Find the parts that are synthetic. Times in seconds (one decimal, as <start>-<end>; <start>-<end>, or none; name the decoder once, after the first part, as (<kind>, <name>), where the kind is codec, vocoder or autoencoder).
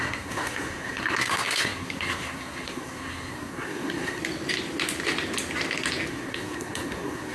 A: 0.0-4.2 (codec, SNAC); 6.1-7.3